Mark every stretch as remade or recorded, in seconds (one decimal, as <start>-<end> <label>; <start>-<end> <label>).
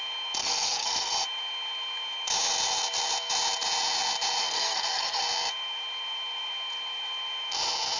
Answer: 0.0-0.4 recorded; 0.4-1.1 remade; 1.1-4.4 recorded; 4.4-5.2 remade; 5.2-8.0 recorded